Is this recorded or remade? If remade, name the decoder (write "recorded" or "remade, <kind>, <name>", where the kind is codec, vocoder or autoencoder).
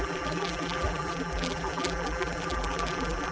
remade, vocoder, BigVGAN v2